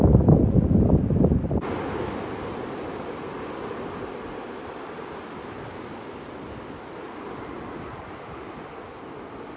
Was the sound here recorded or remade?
recorded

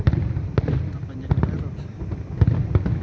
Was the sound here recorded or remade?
recorded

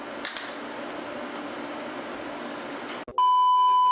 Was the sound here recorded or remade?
recorded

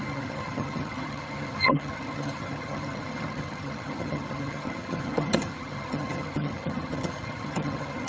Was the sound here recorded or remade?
remade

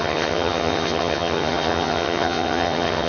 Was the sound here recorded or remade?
remade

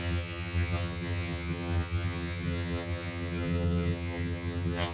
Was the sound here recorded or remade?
remade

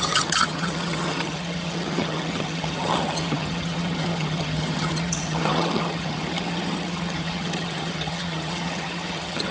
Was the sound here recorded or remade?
remade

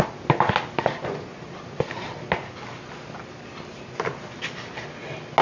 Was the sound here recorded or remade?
recorded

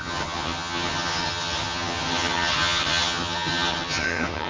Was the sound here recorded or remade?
remade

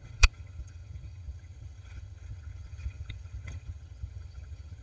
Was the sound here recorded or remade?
remade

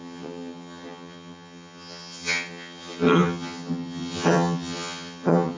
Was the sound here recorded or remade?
remade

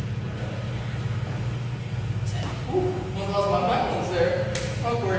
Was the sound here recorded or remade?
recorded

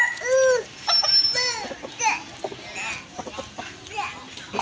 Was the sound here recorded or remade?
recorded